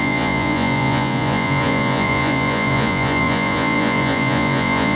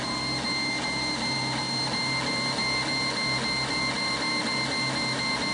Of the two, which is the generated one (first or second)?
first